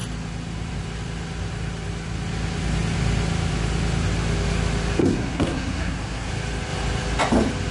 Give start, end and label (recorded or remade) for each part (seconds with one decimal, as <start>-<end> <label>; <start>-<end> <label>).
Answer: 0.0-5.0 recorded; 5.0-6.3 remade; 6.3-7.7 recorded